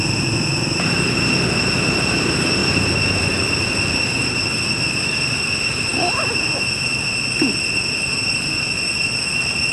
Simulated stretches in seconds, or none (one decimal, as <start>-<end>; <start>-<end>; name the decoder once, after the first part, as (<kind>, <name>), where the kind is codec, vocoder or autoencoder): 0.0-5.9 (vocoder, BigVGAN v2); 7.6-9.7